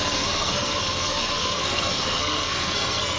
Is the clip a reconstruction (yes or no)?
yes